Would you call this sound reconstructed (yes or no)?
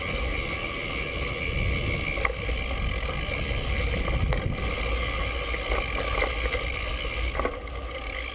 no